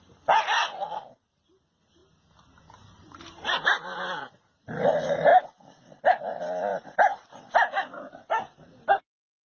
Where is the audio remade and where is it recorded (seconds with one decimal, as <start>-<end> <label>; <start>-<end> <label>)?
0.0-2.0 recorded; 2.0-4.1 remade; 4.1-6.7 recorded; 6.7-7.4 remade; 7.4-9.4 recorded